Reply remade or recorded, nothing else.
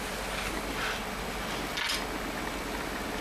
recorded